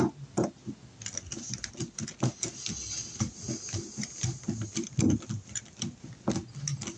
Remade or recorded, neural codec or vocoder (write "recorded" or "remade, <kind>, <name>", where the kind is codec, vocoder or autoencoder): recorded